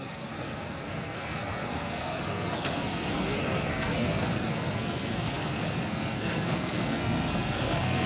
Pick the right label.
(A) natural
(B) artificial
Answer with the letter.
B